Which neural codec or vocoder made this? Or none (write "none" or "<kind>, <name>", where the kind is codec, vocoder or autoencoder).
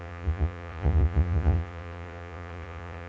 vocoder, Vocos